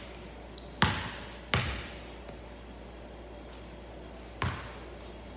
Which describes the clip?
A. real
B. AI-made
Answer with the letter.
A